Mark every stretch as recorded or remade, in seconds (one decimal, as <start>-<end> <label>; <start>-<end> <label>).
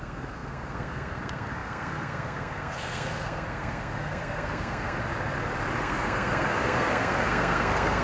0.0-5.0 remade; 5.0-5.8 recorded; 5.8-8.0 remade